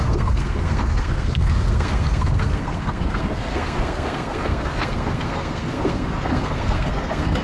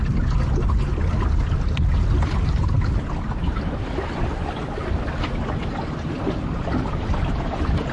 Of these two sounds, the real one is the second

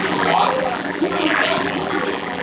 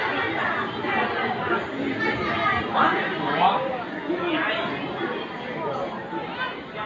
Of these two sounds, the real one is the second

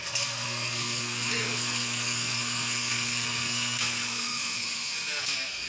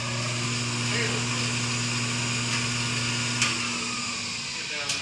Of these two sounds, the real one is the second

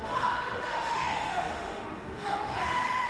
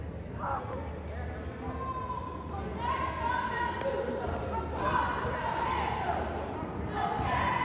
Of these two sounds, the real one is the second